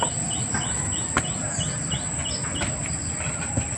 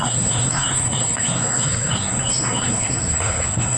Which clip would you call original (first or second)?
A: first